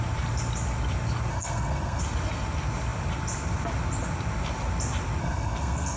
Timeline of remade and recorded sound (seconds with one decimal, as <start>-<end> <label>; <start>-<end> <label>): 0.0-1.3 recorded; 1.3-2.0 remade; 2.0-5.2 recorded; 5.2-6.0 remade